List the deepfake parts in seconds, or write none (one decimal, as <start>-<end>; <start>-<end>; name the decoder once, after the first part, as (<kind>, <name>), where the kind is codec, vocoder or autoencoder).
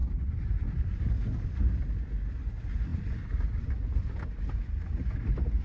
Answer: none